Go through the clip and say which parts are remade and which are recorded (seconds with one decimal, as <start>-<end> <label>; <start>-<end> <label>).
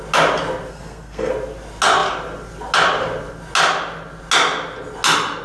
0.0-0.7 recorded; 0.7-1.3 remade; 1.3-5.4 recorded